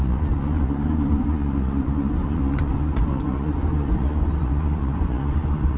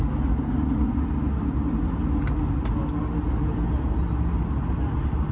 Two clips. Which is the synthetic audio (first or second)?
first